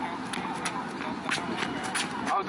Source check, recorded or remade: recorded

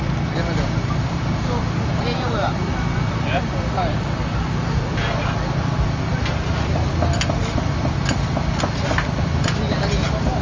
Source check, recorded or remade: recorded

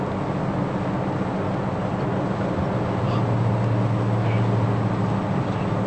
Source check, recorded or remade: recorded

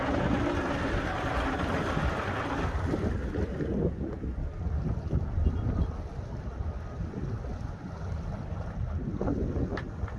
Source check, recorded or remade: recorded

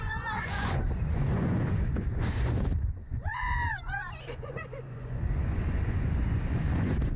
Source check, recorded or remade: remade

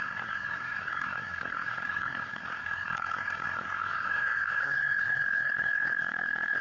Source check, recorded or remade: remade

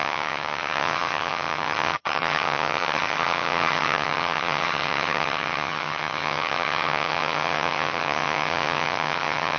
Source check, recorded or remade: remade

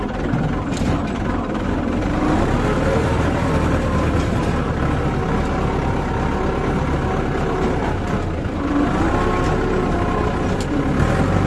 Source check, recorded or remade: recorded